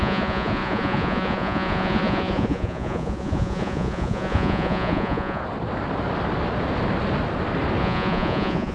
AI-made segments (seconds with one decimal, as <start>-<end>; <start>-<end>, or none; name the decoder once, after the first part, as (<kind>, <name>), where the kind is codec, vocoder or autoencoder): 0.0-5.4 (vocoder, Vocos); 7.8-8.7